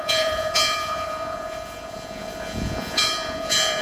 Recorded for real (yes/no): no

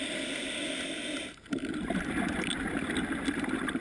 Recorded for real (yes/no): yes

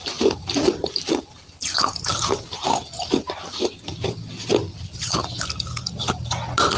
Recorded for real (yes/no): yes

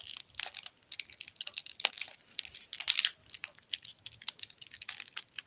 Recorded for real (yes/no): no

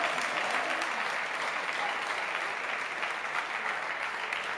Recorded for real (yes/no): yes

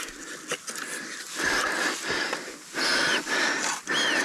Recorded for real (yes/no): yes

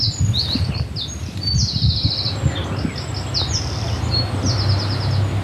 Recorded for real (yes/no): yes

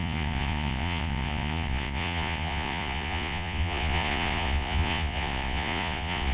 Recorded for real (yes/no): no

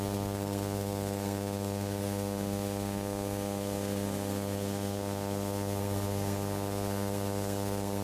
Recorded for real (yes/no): no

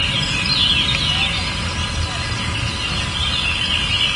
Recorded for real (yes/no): yes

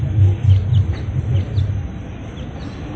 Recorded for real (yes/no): yes